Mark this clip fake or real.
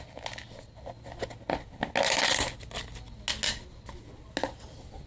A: real